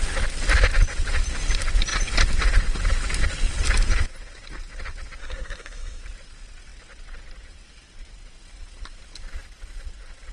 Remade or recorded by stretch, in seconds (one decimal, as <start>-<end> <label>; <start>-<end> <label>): 0.0-5.2 recorded; 5.2-6.0 remade; 6.0-10.3 recorded